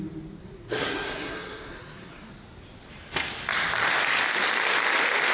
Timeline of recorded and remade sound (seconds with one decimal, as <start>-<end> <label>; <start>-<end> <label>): 0.0-0.4 recorded; 0.4-2.3 remade; 2.3-5.3 recorded